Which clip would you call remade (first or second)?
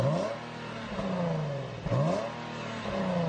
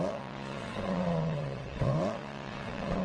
second